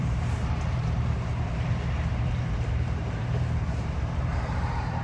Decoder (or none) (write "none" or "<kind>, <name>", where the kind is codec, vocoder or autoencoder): vocoder, BigVGAN v2